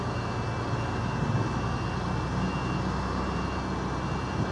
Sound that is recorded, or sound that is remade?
recorded